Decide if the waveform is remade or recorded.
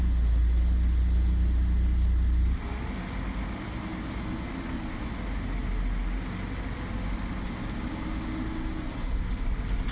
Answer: recorded